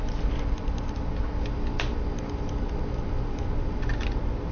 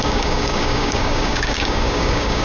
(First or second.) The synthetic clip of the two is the second